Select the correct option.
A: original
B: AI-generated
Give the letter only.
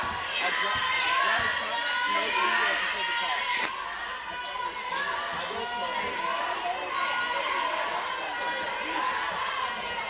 A